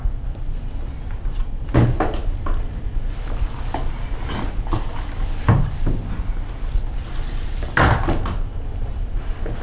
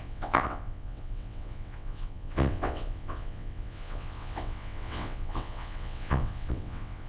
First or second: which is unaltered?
first